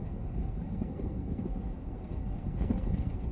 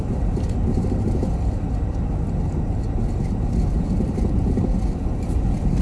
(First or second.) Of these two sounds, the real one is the second